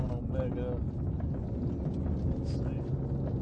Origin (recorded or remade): recorded